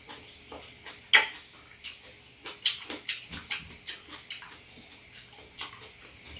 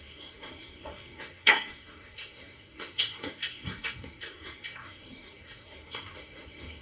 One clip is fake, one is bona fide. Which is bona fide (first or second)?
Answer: first